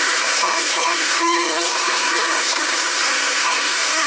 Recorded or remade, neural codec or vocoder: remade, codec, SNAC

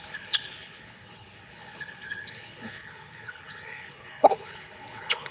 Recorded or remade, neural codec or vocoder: remade, codec, HILCodec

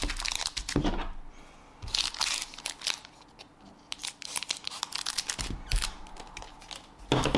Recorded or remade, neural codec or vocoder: recorded